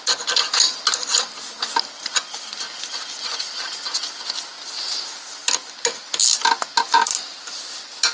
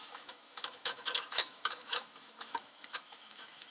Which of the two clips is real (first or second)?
first